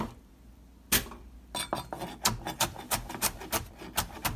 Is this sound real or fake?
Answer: real